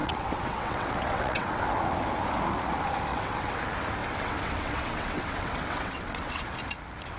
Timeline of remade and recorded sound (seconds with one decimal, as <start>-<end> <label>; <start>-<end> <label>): 0.0-1.6 remade; 1.6-3.1 recorded; 3.1-3.6 remade; 3.6-4.0 recorded; 4.0-6.4 remade; 6.4-7.2 recorded